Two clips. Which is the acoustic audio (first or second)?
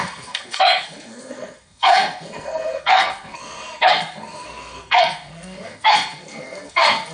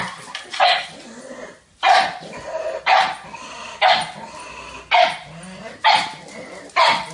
second